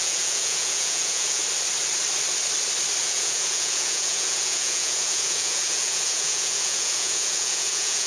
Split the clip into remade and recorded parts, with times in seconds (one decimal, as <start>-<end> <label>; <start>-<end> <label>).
0.0-1.4 remade; 1.4-3.0 recorded; 3.0-8.1 remade